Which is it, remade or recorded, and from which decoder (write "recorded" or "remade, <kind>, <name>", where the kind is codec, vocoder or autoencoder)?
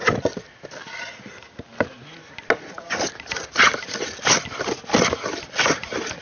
recorded